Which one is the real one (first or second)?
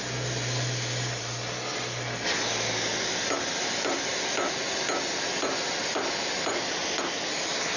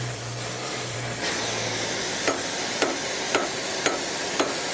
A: first